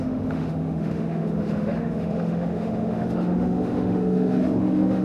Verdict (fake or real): fake